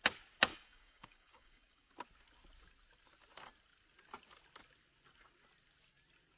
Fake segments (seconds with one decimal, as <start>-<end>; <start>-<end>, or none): 0.5-1.9